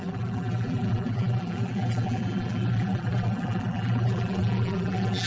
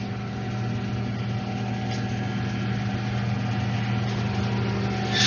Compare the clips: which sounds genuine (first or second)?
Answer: second